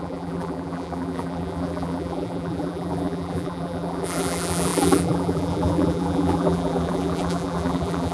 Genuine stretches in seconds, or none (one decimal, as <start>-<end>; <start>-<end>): none